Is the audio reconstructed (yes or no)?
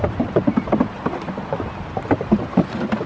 yes